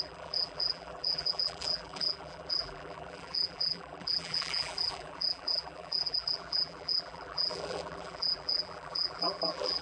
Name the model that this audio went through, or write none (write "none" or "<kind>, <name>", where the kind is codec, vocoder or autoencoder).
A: vocoder, BigVGAN v2